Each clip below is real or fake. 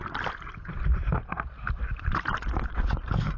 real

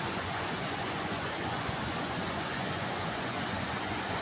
fake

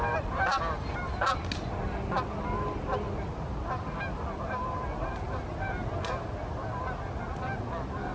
real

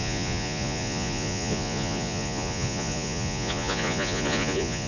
fake